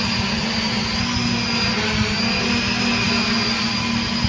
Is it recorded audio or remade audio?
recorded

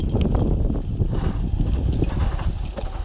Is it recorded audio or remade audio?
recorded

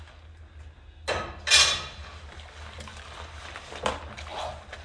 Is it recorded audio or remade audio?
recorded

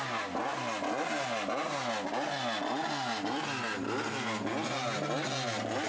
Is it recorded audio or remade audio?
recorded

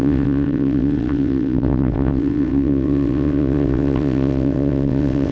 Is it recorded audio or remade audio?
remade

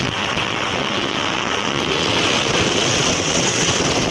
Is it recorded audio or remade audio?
remade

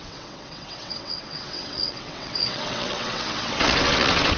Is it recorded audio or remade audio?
remade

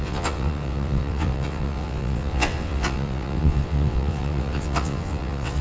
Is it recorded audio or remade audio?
remade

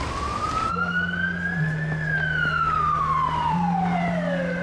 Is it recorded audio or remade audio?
recorded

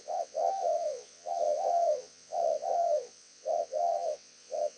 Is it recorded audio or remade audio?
remade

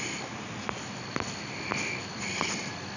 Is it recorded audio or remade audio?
recorded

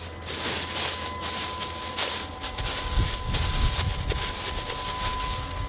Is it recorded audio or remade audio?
recorded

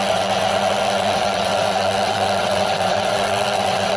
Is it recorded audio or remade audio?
remade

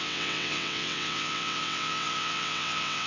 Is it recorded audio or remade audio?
remade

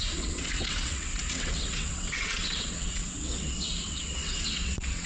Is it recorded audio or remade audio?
remade